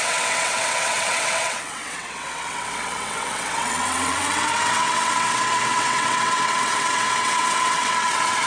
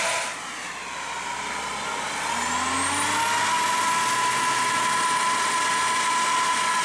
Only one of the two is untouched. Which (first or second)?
second